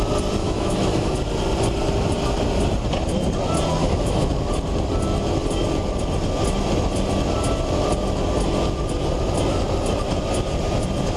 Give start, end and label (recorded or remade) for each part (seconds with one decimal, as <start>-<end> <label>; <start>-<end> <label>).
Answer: 0.0-0.4 recorded; 0.4-1.1 remade; 1.1-3.8 recorded; 3.8-4.3 remade; 4.3-11.2 recorded